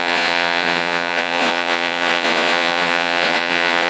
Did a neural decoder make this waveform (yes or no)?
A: yes